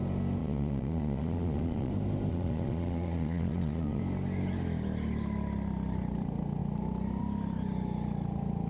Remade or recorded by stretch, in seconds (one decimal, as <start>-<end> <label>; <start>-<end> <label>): 0.0-0.4 recorded; 0.4-1.9 remade; 1.9-2.3 recorded; 2.3-4.0 remade; 4.0-8.7 recorded